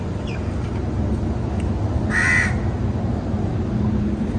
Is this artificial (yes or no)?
no